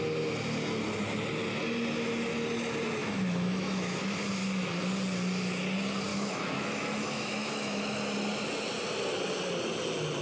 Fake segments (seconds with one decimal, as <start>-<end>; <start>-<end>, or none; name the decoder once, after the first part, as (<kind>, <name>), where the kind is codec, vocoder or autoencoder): 3.0-4.0 (autoencoder, DAC-VAE); 6.1-8.0